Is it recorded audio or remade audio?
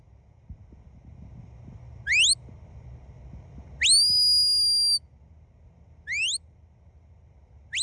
recorded